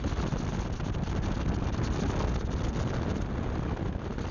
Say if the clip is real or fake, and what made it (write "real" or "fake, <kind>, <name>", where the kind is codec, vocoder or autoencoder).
real